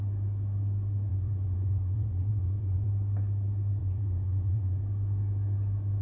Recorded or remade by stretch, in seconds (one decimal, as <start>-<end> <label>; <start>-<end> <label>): 0.0-1.1 recorded; 1.1-2.9 remade; 2.9-3.8 recorded; 3.8-4.8 remade; 4.8-6.0 recorded